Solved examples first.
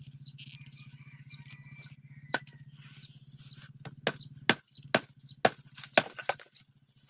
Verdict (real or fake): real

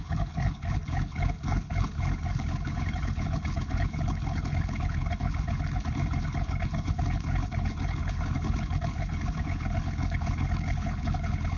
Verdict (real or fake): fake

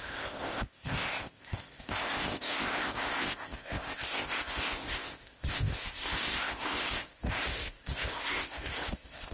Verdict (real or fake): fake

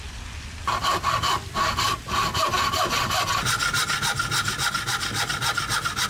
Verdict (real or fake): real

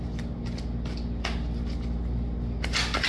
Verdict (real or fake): real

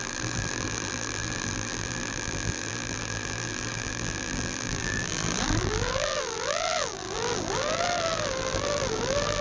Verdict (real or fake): fake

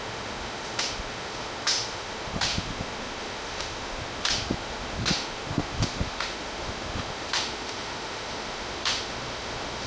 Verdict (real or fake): fake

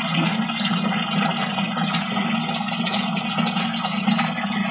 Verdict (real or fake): real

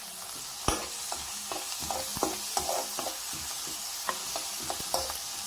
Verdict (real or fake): real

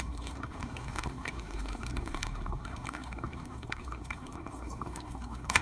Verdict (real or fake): fake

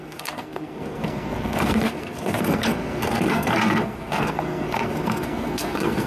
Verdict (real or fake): fake